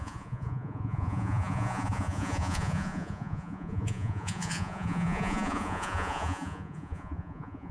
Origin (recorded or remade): remade